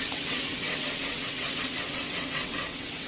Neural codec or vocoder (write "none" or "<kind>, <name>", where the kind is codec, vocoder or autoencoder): vocoder, WaveNeXt